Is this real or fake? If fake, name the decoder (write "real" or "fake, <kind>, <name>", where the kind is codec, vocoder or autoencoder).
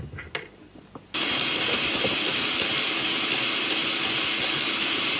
real